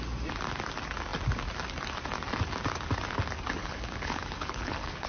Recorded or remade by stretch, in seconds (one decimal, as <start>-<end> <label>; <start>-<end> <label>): 0.0-3.6 recorded; 3.6-5.1 remade